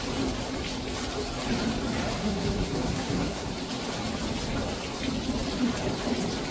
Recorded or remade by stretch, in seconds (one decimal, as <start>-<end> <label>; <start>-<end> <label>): 0.0-2.2 recorded; 2.2-3.5 remade; 3.5-6.5 recorded